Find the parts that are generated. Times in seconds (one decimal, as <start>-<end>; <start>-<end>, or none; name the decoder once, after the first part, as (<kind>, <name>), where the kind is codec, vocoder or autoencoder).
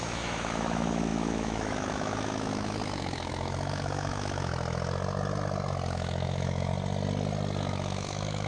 0.0-4.5 (autoencoder, DAC-VAE); 5.9-6.7; 7.6-8.5